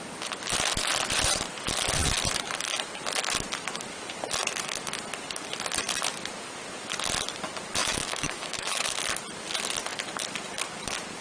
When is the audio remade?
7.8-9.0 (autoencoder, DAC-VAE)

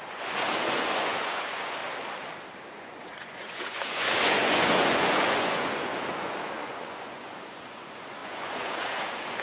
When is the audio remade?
0.0-1.8 (vocoder, Vocos); 2.7-9.4